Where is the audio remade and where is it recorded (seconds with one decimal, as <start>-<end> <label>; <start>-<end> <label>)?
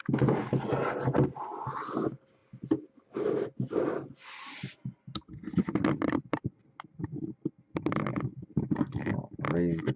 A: 0.0-10.0 recorded